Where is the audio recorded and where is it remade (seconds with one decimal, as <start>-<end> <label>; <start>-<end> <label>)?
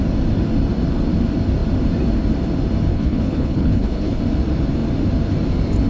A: 0.0-2.9 recorded; 2.9-4.2 remade; 4.2-5.9 recorded